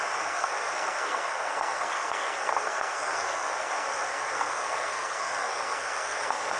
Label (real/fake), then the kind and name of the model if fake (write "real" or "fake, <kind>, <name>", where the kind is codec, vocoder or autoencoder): fake, codec, SNAC